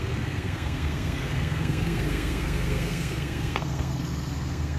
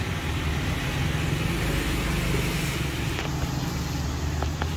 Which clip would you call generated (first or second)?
first